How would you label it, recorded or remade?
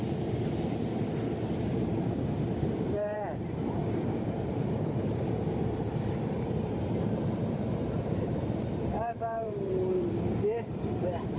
remade